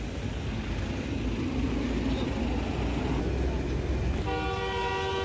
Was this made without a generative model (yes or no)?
yes